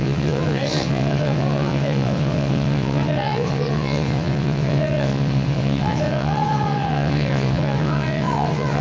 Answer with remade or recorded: remade